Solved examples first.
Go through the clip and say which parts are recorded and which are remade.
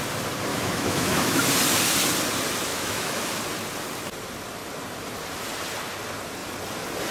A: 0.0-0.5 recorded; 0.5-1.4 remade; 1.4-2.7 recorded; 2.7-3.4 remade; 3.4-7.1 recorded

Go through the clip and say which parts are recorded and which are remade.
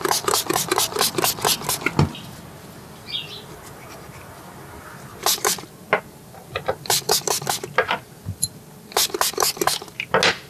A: 0.0-10.5 recorded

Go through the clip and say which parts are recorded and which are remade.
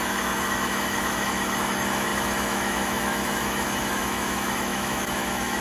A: 0.0-5.6 remade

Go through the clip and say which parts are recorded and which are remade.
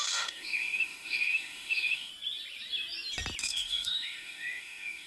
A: 0.0-2.1 remade; 2.1-3.4 recorded; 3.4-5.1 remade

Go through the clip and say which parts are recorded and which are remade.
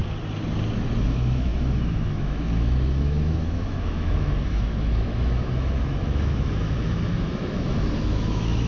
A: 0.0-1.0 recorded; 1.0-8.7 remade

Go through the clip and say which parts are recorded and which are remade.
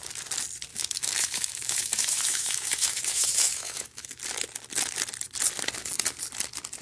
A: 0.0-0.7 recorded; 0.7-4.2 remade; 4.2-6.8 recorded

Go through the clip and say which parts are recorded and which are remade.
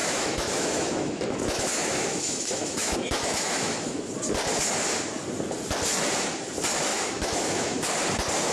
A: 0.0-4.1 remade; 4.1-6.9 recorded; 6.9-7.9 remade; 7.9-8.5 recorded